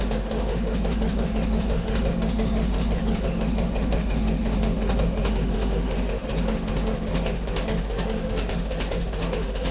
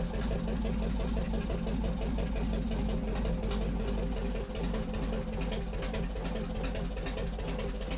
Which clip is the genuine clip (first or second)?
second